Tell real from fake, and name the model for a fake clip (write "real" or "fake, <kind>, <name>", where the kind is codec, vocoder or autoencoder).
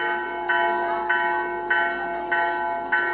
real